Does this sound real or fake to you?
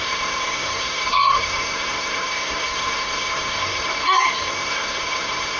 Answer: fake